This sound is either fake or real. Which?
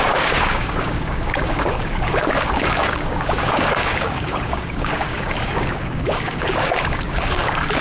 fake